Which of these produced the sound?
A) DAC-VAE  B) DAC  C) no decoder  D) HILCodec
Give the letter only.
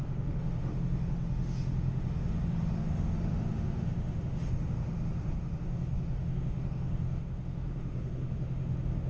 A